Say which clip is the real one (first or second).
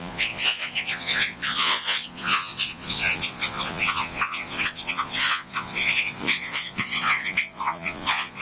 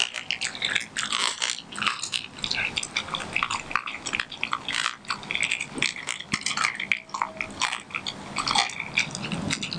second